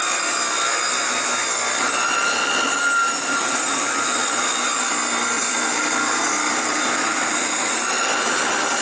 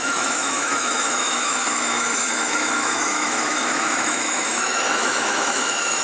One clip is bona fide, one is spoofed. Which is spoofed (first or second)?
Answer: second